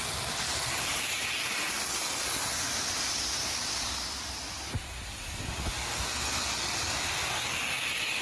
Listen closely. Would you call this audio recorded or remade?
recorded